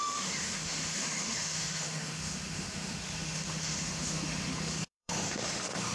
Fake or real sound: fake